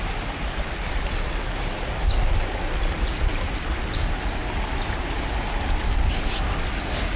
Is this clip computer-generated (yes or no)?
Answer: no